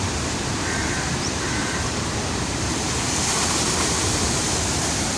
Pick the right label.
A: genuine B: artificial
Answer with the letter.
B